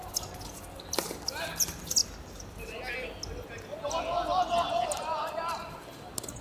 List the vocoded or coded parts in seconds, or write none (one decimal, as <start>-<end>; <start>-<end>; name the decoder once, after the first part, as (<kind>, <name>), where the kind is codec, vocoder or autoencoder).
none